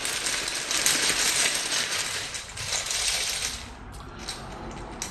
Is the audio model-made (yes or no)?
no